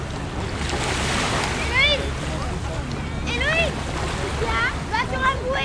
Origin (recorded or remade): recorded